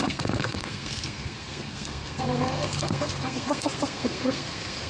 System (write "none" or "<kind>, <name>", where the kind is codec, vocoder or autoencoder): codec, SNAC